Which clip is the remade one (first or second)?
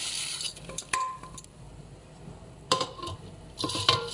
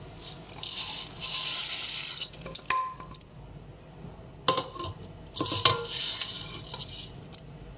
first